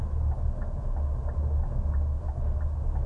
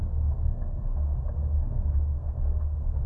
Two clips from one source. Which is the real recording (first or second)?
first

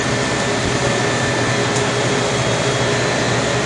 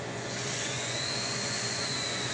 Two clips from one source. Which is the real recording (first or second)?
first